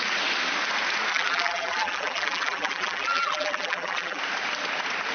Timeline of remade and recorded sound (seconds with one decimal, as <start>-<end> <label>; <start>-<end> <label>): 0.0-1.1 recorded; 1.1-4.2 remade; 4.2-5.1 recorded